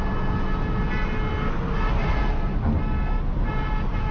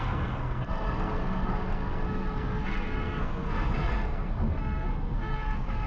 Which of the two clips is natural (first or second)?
first